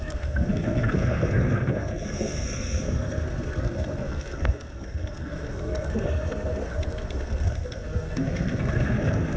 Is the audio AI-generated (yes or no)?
yes